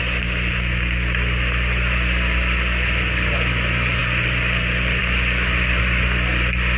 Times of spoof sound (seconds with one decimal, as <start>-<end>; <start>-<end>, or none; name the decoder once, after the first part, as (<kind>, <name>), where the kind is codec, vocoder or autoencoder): 0.0-6.8 (vocoder, BigVGAN v2)